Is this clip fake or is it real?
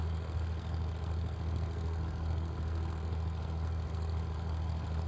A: fake